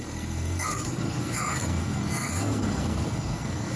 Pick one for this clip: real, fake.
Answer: fake